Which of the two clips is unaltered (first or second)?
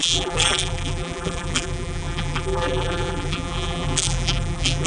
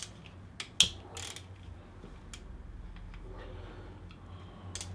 second